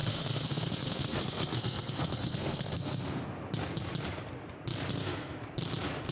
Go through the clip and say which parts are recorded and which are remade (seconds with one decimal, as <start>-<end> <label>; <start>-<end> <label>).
0.0-3.2 remade; 3.2-4.9 recorded; 4.9-5.4 remade; 5.4-6.1 recorded